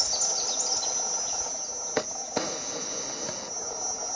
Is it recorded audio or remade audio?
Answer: recorded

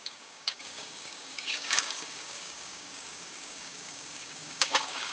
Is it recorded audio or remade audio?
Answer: remade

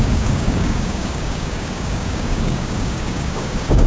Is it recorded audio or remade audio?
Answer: remade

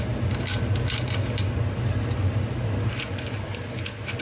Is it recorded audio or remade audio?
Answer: recorded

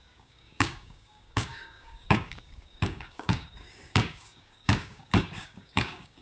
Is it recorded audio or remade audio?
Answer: remade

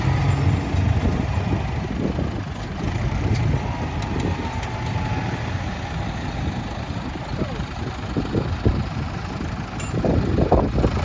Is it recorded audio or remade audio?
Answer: recorded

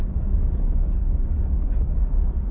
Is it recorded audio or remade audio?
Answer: remade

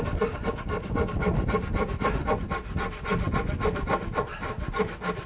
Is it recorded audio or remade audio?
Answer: recorded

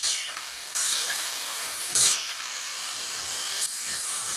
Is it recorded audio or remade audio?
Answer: remade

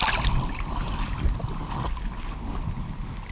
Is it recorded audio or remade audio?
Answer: recorded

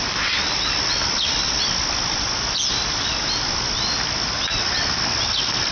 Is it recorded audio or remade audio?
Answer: recorded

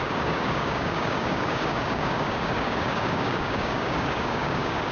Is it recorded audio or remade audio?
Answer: remade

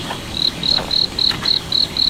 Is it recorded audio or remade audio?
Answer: remade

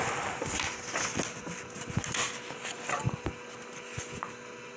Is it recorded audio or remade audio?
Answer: recorded